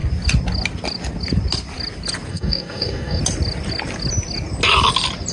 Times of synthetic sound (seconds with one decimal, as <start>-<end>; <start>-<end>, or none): 2.3-3.2